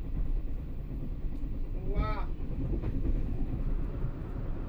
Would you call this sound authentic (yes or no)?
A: no